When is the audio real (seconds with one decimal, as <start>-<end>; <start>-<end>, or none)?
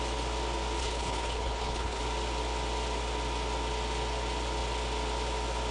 0.0-0.8; 2.0-5.7